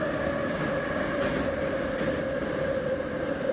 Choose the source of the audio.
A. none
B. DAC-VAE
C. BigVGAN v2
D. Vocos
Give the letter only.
A